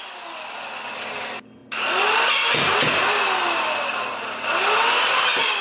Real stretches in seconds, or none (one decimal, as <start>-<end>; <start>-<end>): 0.0-5.6